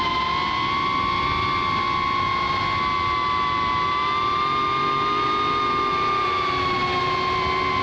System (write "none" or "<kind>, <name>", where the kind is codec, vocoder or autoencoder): none